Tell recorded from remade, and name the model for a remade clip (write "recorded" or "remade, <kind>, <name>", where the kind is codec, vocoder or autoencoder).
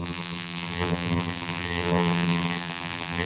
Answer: remade, vocoder, BigVGAN v2